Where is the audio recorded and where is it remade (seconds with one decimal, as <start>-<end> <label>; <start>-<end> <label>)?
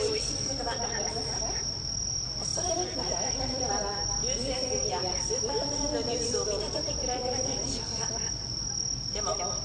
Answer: 0.0-2.5 recorded; 2.5-3.7 remade; 3.7-4.4 recorded; 4.4-8.0 remade; 8.0-9.6 recorded